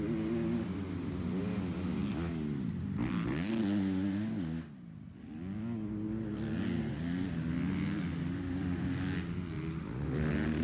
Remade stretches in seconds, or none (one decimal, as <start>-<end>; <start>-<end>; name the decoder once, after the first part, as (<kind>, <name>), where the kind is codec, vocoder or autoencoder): none